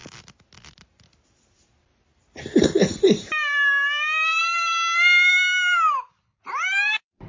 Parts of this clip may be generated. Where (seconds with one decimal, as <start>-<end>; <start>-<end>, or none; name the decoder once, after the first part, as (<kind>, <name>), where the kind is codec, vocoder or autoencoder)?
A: none